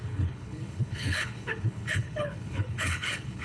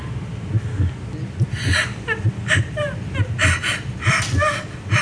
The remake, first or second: first